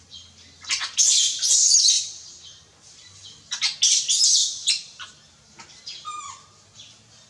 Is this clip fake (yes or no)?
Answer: yes